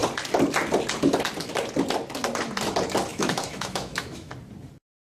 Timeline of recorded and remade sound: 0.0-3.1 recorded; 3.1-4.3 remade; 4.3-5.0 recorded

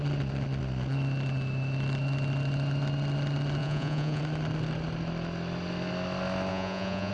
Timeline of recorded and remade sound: 0.0-3.6 recorded; 3.6-4.2 remade; 4.2-6.5 recorded; 6.5-7.1 remade

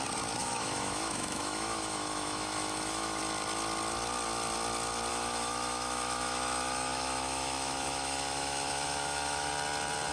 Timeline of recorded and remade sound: 0.0-0.4 recorded; 0.4-3.2 remade; 3.2-5.1 recorded; 5.1-9.5 remade; 9.5-10.1 recorded